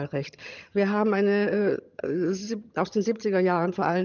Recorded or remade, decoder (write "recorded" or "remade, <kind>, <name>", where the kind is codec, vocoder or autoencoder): remade, vocoder, HiFi-GAN